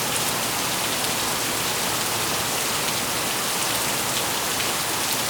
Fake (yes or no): no